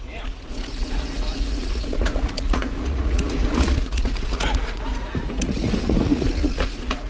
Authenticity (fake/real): fake